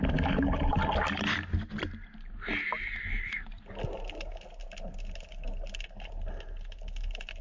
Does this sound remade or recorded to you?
recorded